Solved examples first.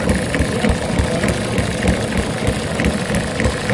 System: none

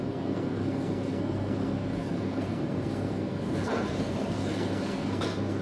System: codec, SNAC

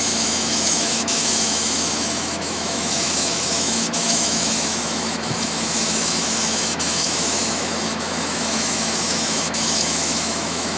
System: autoencoder, DAC-VAE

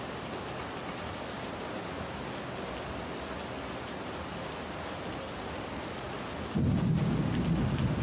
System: none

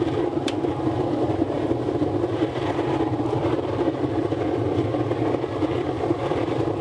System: vocoder, BigVGAN v2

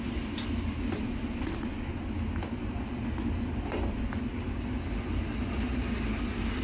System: none